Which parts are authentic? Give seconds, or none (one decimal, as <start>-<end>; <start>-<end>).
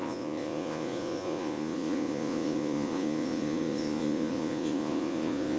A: none